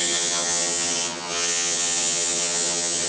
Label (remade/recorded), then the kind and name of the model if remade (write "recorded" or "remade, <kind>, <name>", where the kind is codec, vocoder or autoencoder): remade, vocoder, HiFi-GAN